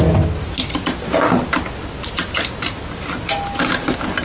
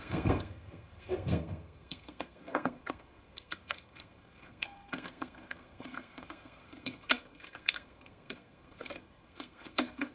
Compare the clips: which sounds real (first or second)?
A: first